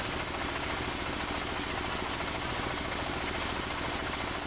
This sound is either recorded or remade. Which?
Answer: recorded